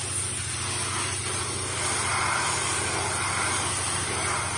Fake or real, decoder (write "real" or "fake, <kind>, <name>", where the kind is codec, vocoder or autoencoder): real